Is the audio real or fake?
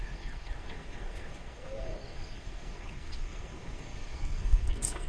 fake